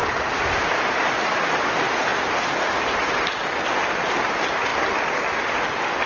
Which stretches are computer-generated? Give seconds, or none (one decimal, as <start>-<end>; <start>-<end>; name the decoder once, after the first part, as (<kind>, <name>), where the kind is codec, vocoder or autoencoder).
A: 0.0-0.6 (vocoder, BigVGAN v2)